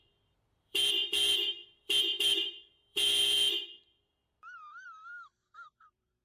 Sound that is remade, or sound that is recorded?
remade